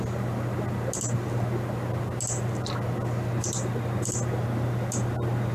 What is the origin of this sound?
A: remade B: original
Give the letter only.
B